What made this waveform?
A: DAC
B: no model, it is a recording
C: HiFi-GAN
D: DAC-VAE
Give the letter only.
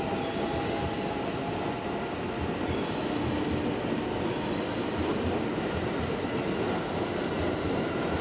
B